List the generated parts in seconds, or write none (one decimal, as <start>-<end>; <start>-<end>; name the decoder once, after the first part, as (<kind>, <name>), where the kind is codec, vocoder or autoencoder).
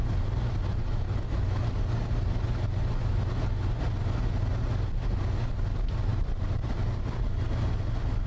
none